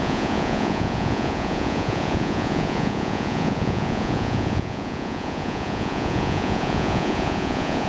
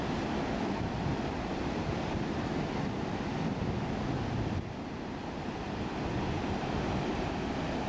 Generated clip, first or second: first